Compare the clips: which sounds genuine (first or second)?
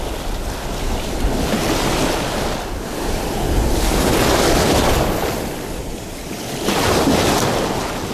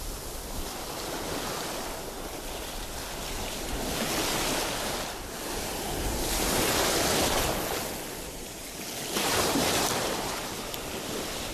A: first